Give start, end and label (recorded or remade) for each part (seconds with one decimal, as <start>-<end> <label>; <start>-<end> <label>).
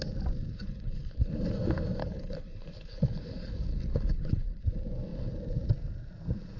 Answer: 0.0-0.5 recorded; 0.5-1.3 remade; 1.3-2.0 recorded; 2.0-4.6 remade; 4.6-6.6 recorded